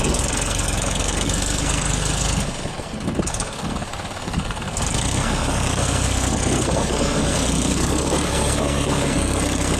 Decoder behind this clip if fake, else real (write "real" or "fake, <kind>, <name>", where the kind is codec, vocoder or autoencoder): fake, codec, SNAC